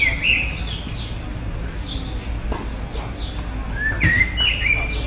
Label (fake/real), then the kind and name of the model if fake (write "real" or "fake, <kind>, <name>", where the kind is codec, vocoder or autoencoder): real